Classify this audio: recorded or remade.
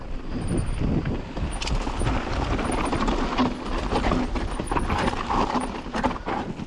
recorded